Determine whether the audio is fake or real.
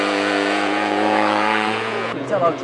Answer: fake